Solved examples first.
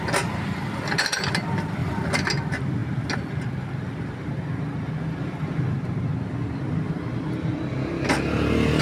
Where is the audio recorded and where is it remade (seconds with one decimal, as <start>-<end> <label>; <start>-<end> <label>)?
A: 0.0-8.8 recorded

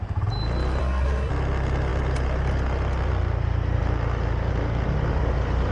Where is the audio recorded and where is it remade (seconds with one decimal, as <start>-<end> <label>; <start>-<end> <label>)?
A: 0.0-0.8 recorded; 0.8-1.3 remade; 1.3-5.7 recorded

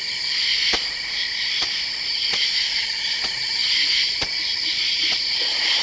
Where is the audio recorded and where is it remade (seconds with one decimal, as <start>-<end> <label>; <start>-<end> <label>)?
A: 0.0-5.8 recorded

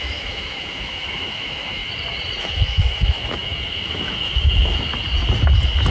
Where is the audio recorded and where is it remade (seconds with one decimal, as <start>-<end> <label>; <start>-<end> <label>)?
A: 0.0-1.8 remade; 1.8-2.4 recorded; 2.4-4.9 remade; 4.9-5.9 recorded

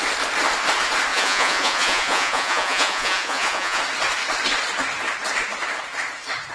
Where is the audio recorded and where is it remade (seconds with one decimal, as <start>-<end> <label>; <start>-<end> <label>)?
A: 0.0-1.1 recorded; 1.1-3.8 remade; 3.8-6.5 recorded

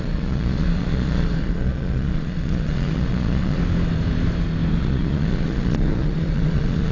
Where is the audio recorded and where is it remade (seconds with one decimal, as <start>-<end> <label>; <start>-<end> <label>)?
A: 0.0-3.6 remade; 3.6-4.8 recorded; 4.8-6.9 remade

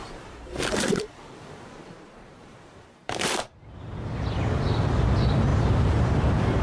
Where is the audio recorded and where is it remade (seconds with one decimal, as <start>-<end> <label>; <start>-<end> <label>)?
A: 0.0-3.6 remade; 3.6-5.5 recorded; 5.5-6.0 remade; 6.0-6.6 recorded

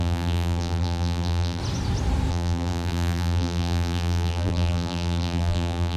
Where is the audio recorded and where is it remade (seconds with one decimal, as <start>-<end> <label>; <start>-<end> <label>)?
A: 0.0-1.6 remade; 1.6-2.3 recorded; 2.3-6.0 remade